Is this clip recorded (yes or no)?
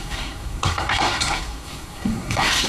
no